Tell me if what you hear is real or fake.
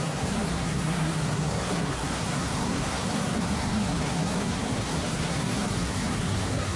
fake